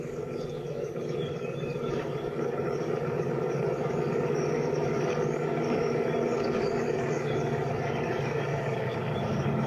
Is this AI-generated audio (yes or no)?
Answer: yes